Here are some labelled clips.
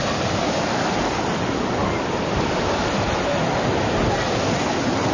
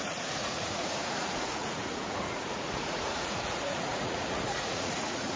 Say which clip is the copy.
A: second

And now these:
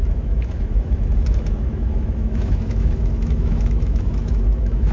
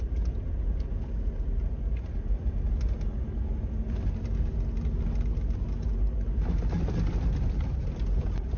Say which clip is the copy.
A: first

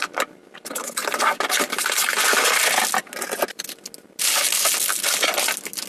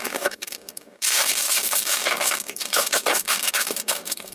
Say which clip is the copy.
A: second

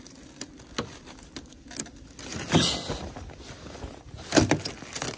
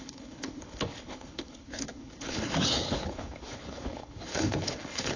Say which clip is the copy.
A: second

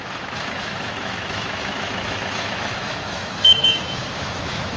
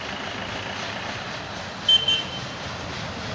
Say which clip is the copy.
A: first